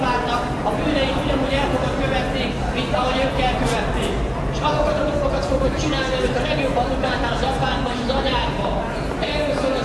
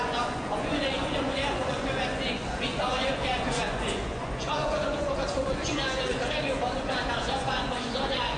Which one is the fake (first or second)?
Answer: second